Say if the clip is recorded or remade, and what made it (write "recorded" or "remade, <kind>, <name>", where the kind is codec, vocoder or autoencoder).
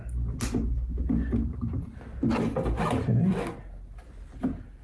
recorded